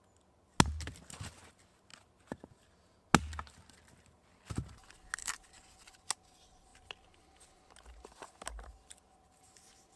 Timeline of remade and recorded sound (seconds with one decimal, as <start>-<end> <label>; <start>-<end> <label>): 0.0-10.0 recorded